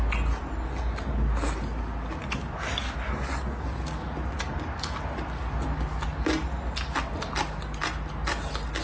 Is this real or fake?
real